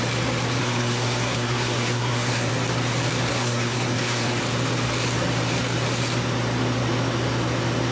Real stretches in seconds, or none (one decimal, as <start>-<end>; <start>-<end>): 0.0-0.6; 2.5-3.3; 4.4-7.9